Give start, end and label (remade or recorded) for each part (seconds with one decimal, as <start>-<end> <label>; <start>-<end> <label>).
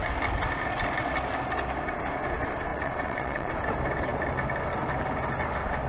0.0-2.7 recorded; 2.7-3.5 remade; 3.5-5.9 recorded